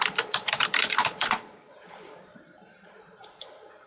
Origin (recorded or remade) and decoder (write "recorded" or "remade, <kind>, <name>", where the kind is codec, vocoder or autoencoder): remade, vocoder, BigVGAN v2